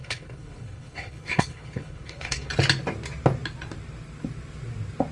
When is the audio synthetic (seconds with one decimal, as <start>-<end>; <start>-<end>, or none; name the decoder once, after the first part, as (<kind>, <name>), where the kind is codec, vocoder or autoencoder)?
0.0-2.5 (codec, HILCodec)